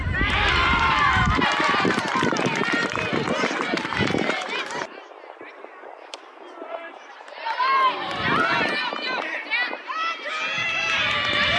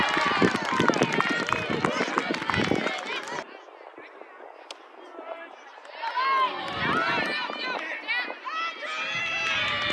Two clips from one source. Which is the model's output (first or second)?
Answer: first